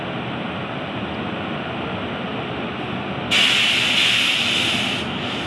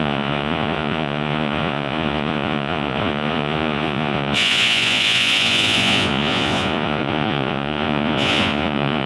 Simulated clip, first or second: second